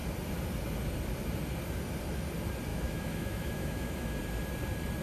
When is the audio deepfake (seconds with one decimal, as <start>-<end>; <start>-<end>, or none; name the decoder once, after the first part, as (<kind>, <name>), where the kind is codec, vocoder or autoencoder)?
2.7-4.2 (autoencoder, DAC-VAE)